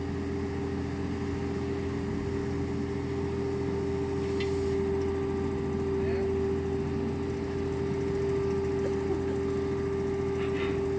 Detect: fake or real real